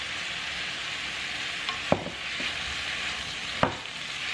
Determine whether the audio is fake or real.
real